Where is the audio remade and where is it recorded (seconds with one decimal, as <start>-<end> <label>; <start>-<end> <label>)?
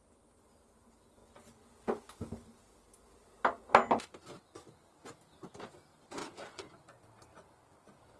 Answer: 0.0-6.2 recorded; 6.2-6.8 remade; 6.8-8.2 recorded